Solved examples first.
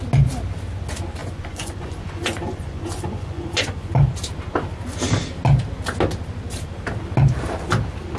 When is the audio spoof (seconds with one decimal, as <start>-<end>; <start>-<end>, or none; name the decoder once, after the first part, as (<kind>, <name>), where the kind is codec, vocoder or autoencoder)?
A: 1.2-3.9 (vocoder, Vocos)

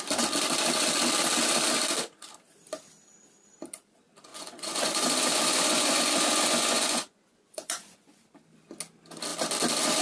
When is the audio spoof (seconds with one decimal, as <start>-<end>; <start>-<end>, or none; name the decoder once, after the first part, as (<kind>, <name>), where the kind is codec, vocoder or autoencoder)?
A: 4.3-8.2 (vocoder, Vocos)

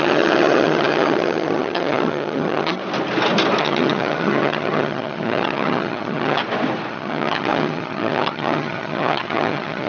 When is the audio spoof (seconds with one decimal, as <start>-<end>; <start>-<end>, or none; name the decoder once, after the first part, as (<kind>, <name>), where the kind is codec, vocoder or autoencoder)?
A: 0.0-2.8 (vocoder, HiFi-GAN); 3.6-6.4; 6.9-9.9